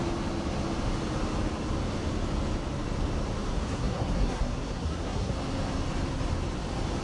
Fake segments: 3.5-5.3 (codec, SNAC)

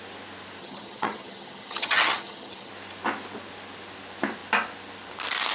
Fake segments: 0.6-2.7 (vocoder, HiFi-GAN)

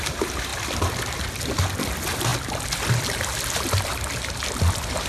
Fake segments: none

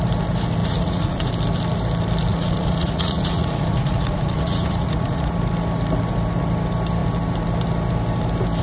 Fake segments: 0.6-1.3 (vocoder, Vocos); 2.3-5.3

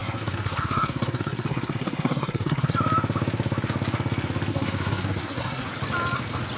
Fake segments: 0.0-2.7 (codec, SNAC); 4.5-5.7

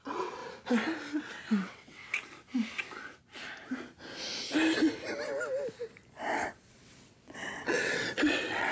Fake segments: 0.0-0.4 (vocoder, WaveNeXt); 1.2-2.0; 6.7-8.7